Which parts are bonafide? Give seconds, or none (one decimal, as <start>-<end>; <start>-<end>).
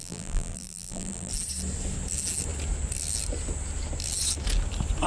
1.3-5.1